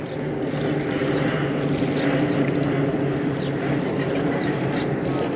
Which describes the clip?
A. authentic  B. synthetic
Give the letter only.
A